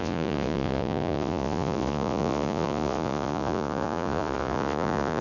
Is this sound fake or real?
fake